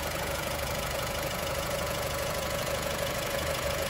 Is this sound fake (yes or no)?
yes